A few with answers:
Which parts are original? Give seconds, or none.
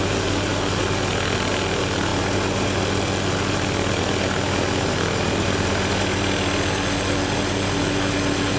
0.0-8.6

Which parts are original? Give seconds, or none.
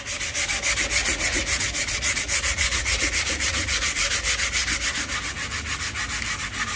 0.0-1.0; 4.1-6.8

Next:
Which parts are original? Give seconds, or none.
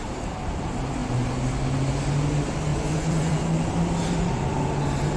0.0-2.7; 3.4-5.2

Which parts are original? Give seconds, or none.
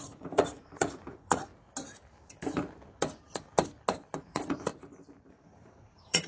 1.5-4.2; 4.7-5.3